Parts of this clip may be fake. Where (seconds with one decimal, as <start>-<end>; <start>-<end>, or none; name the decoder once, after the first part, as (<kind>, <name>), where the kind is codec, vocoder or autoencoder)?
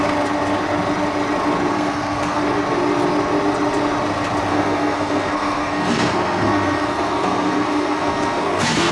1.7-2.4 (codec, SNAC); 4.5-8.9